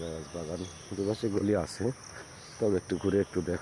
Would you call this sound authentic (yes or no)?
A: yes